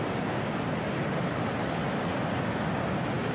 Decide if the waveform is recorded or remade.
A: recorded